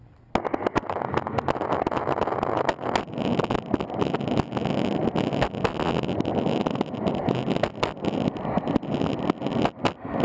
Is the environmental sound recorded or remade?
recorded